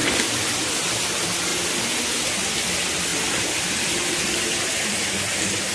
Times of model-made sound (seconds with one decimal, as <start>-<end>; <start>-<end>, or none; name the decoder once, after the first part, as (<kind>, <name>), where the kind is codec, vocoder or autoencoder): 3.1-5.1 (vocoder, BigVGAN v2)